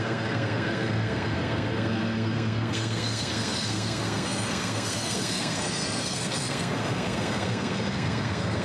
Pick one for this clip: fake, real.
fake